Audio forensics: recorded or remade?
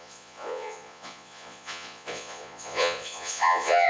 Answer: remade